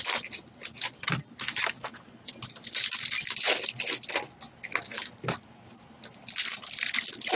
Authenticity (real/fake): real